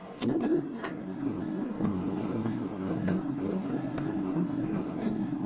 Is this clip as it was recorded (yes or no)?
no